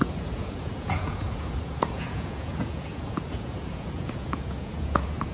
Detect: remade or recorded remade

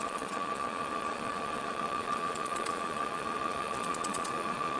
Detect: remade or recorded remade